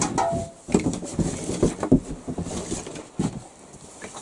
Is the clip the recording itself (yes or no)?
yes